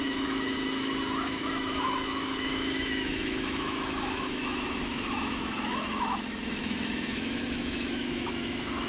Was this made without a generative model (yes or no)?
no